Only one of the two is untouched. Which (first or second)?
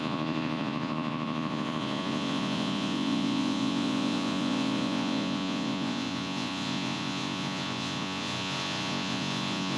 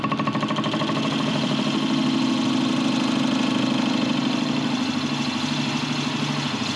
second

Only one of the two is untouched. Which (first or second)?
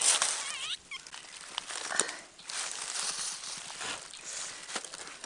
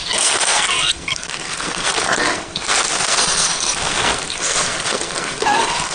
first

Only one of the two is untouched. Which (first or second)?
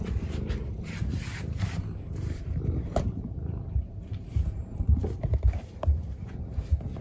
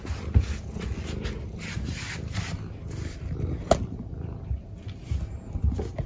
second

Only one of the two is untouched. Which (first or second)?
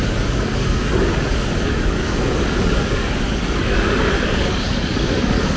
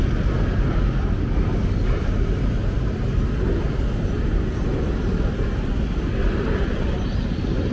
second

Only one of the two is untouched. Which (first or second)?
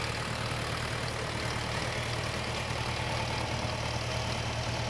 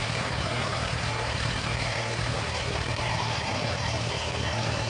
first